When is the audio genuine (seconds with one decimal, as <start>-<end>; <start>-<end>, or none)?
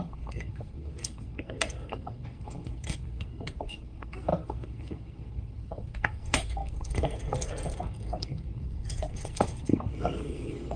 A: none